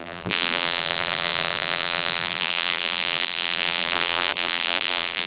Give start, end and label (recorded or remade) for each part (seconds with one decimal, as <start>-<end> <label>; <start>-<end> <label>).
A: 0.0-5.3 remade